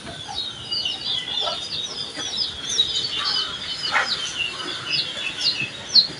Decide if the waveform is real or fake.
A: real